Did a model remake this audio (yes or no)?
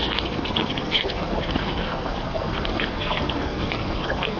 yes